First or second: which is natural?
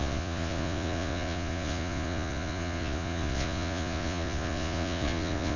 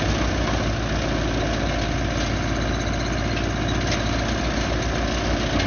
second